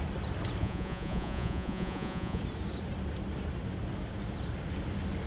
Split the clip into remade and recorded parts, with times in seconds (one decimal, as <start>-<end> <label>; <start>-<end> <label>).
0.0-0.6 recorded; 0.6-2.4 remade; 2.4-5.3 recorded